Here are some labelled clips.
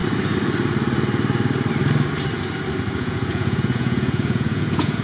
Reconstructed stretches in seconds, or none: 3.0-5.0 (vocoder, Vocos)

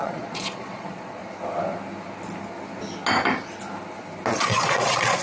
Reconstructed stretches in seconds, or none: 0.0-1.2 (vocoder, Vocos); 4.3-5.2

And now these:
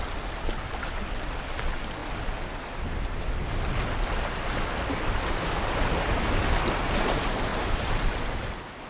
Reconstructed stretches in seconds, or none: none

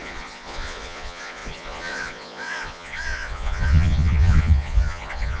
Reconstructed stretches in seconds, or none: 0.0-5.4 (vocoder, Vocos)

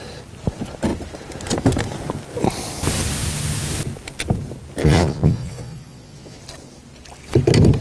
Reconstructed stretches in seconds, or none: 4.8-6.4 (vocoder, Vocos)